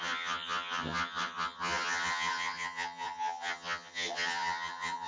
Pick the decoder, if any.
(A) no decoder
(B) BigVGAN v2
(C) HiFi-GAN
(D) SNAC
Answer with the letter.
C